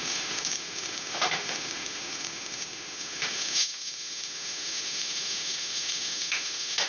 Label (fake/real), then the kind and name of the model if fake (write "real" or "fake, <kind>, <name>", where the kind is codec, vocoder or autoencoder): fake, autoencoder, DAC-VAE